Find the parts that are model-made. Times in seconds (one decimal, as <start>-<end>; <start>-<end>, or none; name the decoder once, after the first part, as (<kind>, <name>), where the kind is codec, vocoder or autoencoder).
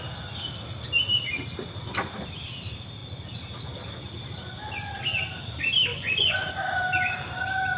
5.9-6.5 (vocoder, Vocos)